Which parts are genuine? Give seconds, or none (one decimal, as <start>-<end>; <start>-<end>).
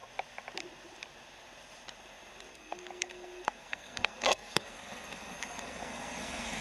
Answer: 0.0-2.5